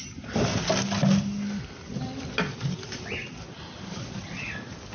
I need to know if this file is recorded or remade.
recorded